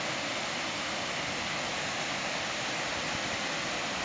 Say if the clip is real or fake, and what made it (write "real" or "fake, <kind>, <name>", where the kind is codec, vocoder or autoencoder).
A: real